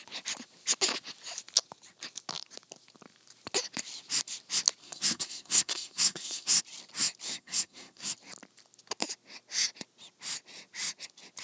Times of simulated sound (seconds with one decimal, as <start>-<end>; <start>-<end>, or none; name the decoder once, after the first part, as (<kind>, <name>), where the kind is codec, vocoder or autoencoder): 4.8-6.6 (codec, SNAC); 7.3-8.1